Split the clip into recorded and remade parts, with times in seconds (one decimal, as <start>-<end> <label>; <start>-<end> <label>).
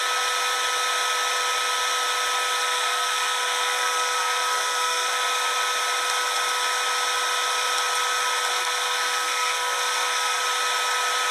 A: 0.0-2.6 recorded; 2.6-5.2 remade; 5.2-8.5 recorded; 8.5-10.4 remade; 10.4-11.3 recorded